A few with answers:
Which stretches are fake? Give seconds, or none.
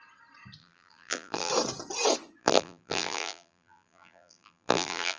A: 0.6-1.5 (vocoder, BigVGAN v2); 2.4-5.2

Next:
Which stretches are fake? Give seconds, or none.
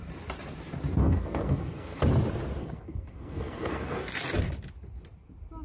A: 1.0-2.0 (codec, SNAC); 2.6-4.1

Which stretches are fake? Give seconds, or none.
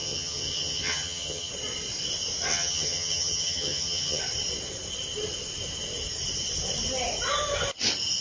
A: 0.0-1.5 (vocoder, HiFi-GAN); 2.5-4.2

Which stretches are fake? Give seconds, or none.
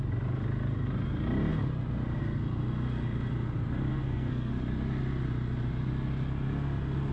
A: 3.9-4.5 (codec, SNAC)